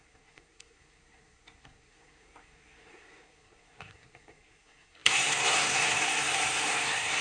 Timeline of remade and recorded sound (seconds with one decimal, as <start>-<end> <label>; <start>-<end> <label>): 0.0-7.2 remade